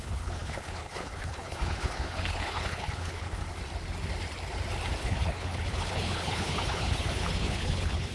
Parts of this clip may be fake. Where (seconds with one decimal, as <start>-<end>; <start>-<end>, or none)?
0.0-3.4; 5.0-8.1